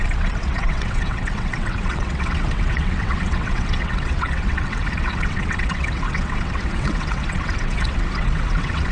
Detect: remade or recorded remade